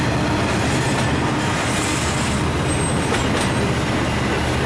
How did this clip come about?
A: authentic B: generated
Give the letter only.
A